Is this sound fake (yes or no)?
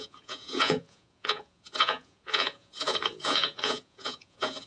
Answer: yes